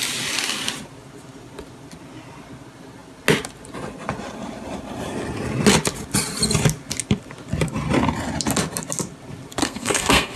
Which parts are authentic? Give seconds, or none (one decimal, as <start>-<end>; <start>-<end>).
0.0-9.6